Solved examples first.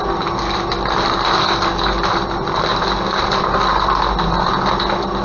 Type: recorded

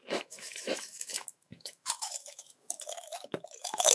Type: remade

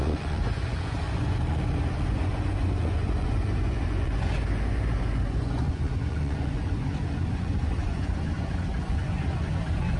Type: remade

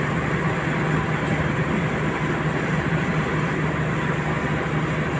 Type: recorded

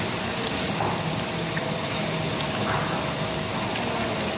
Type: recorded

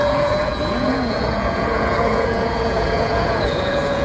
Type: remade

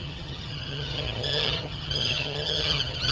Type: remade